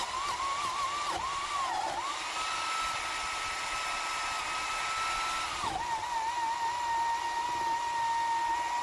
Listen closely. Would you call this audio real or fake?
real